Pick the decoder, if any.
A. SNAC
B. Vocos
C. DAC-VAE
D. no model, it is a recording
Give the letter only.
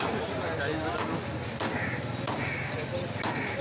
D